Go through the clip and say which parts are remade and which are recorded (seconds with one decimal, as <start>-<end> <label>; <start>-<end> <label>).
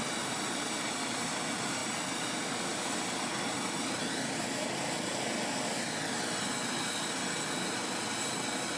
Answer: 0.0-8.8 recorded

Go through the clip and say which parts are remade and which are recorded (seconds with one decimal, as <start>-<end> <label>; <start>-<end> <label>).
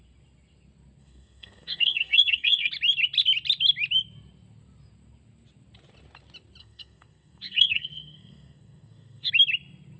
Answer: 0.0-1.0 recorded; 1.0-2.7 remade; 2.7-6.6 recorded; 6.6-9.3 remade; 9.3-10.0 recorded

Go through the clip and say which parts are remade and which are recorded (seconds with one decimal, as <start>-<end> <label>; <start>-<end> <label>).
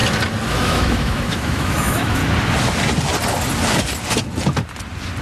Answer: 0.0-0.5 recorded; 0.5-2.2 remade; 2.2-5.2 recorded